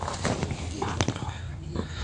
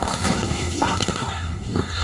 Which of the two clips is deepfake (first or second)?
second